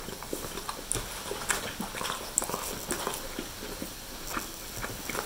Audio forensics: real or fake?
real